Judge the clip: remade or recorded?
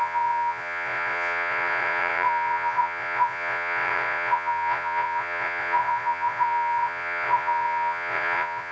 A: remade